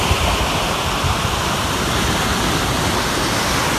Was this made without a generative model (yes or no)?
yes